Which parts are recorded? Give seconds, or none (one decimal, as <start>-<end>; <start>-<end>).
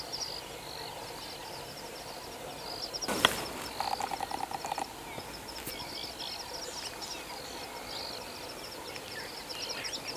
0.0-1.4; 2.2-10.2